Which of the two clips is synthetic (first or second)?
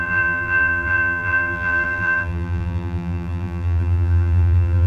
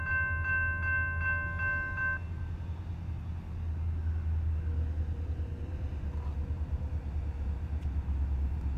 first